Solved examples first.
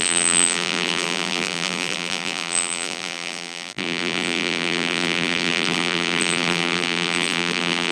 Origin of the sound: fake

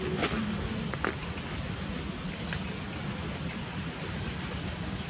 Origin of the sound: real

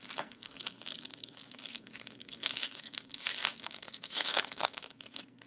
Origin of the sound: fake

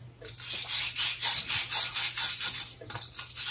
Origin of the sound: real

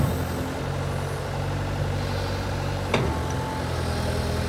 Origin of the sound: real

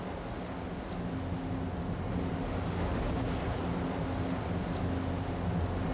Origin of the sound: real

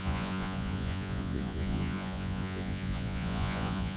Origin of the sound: fake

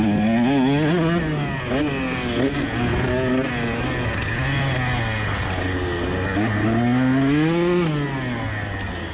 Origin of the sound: real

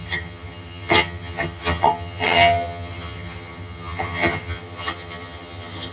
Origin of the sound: fake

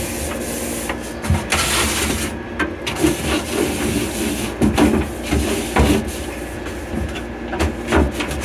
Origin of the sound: real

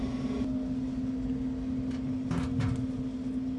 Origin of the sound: real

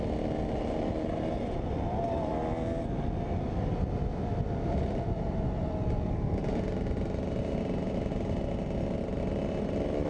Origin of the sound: real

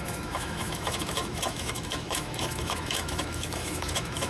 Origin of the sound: fake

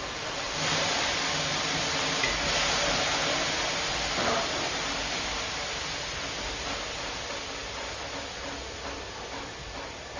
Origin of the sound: real